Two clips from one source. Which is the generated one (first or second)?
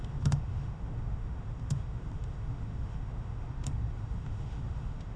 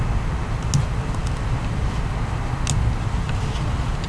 first